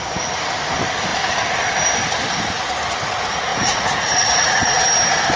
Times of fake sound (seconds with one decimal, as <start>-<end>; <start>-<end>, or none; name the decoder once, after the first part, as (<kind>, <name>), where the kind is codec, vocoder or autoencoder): 3.5-4.8 (vocoder, Vocos)